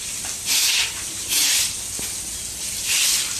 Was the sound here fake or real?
real